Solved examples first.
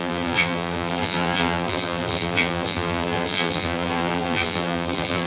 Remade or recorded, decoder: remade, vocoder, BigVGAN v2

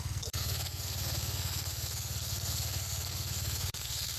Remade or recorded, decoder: remade, codec, SNAC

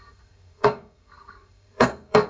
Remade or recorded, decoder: remade, codec, SNAC